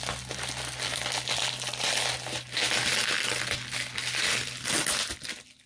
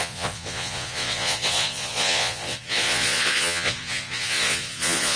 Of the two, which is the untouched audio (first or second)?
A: first